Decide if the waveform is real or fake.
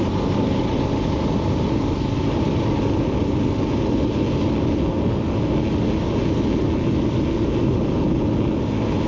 real